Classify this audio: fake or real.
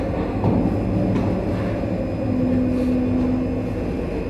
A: real